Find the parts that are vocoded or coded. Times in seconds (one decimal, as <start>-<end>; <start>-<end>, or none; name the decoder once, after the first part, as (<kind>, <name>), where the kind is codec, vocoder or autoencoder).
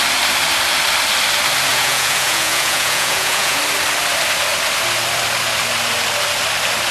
1.7-3.6 (vocoder, Vocos)